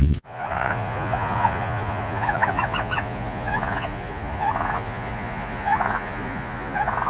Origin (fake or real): fake